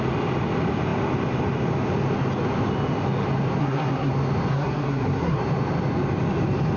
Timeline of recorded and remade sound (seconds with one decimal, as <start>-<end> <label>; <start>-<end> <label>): 0.0-3.6 recorded; 3.6-4.1 remade; 4.1-4.5 recorded; 4.5-5.4 remade; 5.4-6.8 recorded